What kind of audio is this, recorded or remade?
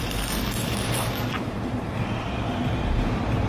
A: remade